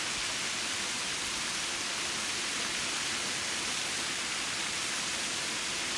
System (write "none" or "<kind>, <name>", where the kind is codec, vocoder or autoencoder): none